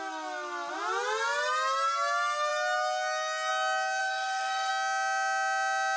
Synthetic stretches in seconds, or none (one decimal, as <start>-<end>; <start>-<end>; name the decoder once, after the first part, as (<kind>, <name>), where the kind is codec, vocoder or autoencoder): 4.0-4.7 (codec, SNAC)